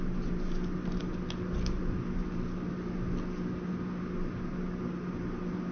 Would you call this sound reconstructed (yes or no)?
no